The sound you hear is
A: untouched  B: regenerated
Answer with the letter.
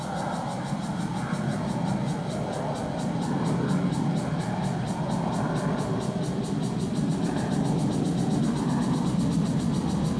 A